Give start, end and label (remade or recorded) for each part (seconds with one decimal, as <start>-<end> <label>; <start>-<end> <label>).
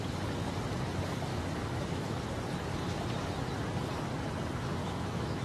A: 0.0-1.3 recorded; 1.3-2.2 remade; 2.2-4.8 recorded; 4.8-5.4 remade